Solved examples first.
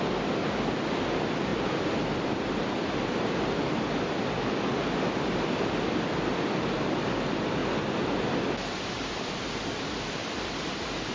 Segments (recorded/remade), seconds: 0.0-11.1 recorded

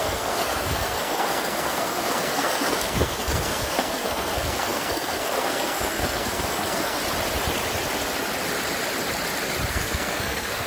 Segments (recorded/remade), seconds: 0.0-7.0 remade; 7.0-9.7 recorded; 9.7-10.7 remade

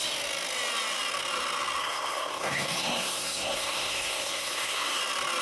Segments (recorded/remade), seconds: 0.0-1.8 recorded; 1.8-5.0 remade; 5.0-5.4 recorded